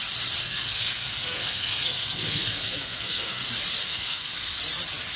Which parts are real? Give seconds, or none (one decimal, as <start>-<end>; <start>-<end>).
0.0-0.4; 3.5-3.9; 4.6-5.2